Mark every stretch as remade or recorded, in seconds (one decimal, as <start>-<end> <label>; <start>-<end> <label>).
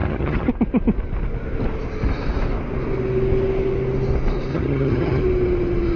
0.0-0.5 remade; 0.5-4.5 recorded; 4.5-5.2 remade; 5.2-6.0 recorded